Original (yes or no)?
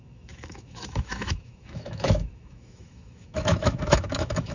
no